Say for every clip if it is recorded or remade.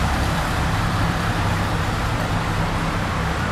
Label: remade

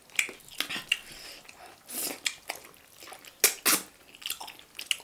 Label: recorded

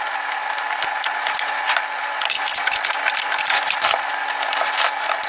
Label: recorded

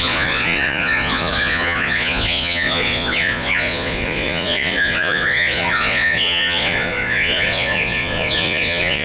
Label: remade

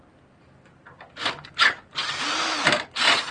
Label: recorded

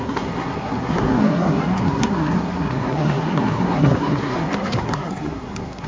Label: remade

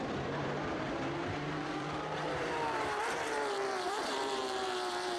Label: remade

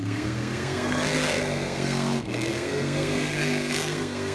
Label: remade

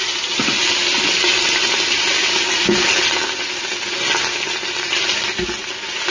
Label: recorded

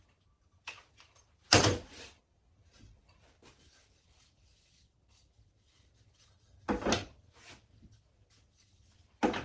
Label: remade